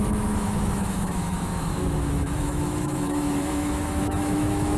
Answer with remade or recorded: remade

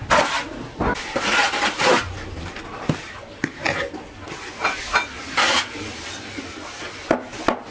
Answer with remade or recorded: recorded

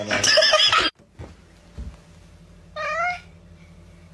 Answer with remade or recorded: recorded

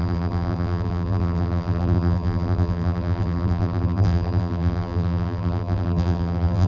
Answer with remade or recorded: remade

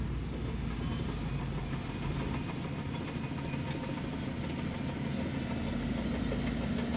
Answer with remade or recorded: recorded